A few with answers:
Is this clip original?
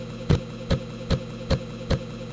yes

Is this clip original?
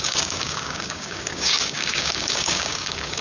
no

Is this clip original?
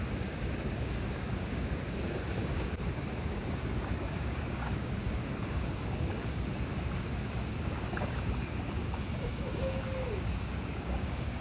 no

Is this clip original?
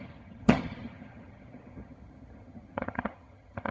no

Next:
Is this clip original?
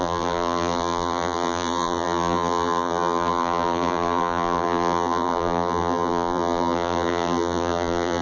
no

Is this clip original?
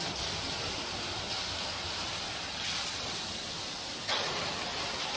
no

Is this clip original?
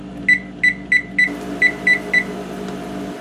yes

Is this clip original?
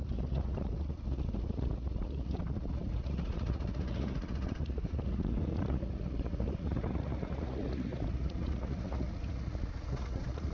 no